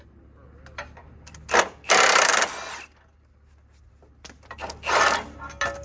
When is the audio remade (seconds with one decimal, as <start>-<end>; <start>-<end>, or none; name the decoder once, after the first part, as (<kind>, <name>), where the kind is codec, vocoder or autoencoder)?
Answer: none